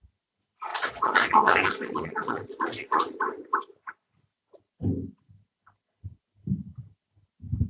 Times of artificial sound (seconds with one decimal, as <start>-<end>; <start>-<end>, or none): 0.7-3.2